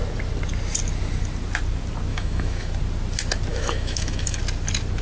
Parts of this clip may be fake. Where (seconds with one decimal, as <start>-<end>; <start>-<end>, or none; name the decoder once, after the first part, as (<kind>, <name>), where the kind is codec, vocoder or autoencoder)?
2.1-2.7 (autoencoder, DAC-VAE); 3.5-4.4